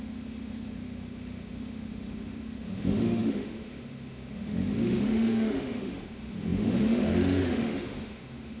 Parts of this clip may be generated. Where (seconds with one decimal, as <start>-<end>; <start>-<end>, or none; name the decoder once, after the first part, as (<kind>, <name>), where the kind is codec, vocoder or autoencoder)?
0.0-8.6 (autoencoder, DAC-VAE)